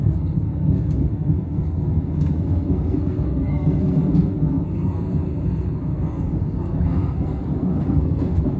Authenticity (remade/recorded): remade